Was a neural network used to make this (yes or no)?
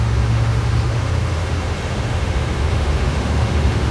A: yes